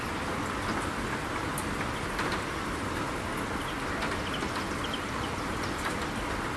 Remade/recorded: recorded